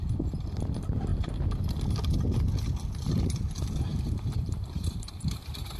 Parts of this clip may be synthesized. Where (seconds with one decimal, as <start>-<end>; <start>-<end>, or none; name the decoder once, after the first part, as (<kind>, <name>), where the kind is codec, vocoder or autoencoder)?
3.9-5.8 (vocoder, BigVGAN v2)